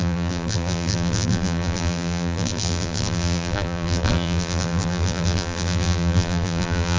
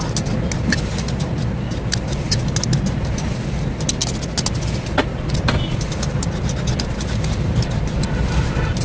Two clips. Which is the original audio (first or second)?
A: second